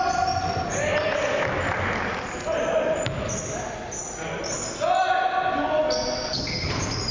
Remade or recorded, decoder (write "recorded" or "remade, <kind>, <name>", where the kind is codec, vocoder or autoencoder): recorded